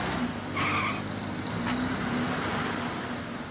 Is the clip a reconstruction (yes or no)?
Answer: no